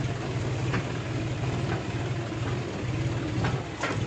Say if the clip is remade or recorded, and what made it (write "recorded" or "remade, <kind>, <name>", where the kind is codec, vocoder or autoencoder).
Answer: recorded